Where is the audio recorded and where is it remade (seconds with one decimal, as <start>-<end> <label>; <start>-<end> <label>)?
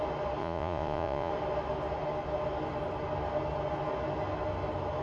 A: 0.0-0.4 recorded; 0.4-1.3 remade; 1.3-5.0 recorded